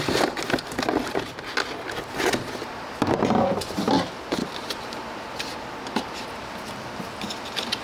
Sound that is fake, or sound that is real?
real